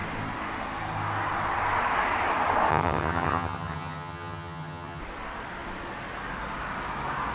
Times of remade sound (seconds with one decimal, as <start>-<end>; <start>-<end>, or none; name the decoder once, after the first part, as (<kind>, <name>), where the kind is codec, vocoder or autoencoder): 2.7-5.0 (vocoder, HiFi-GAN)